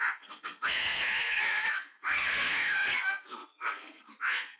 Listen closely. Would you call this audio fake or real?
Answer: fake